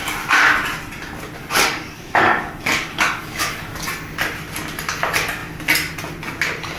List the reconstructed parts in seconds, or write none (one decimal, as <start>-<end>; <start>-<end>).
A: 1.4-3.9